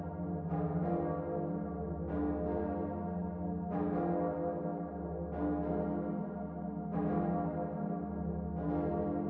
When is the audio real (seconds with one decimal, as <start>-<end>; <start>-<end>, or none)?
0.0-9.3